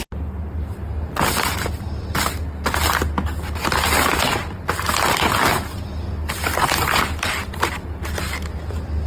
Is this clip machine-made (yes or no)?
no